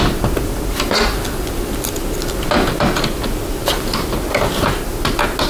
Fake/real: real